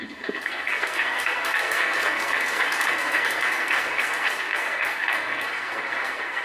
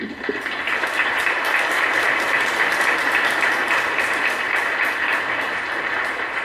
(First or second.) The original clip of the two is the second